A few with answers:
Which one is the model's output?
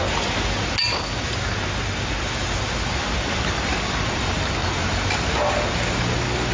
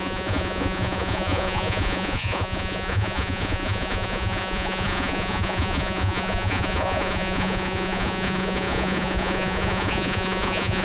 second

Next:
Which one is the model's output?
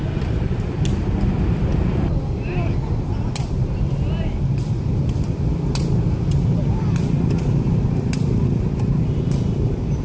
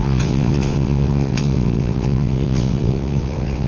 second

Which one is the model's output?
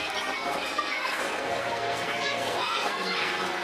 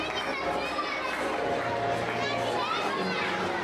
first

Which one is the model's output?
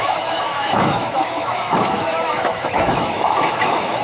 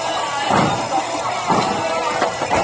first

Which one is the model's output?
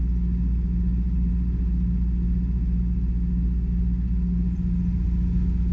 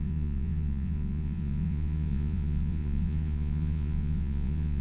second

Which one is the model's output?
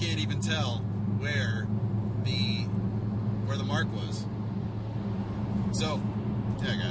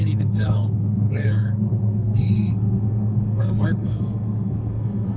second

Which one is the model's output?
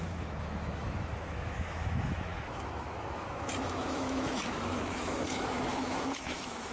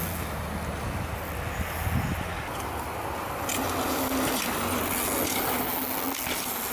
first